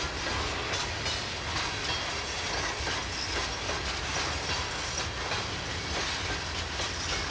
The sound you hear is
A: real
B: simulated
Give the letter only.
A